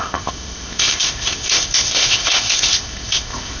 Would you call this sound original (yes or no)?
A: no